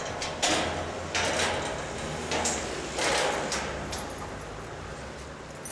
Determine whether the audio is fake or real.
real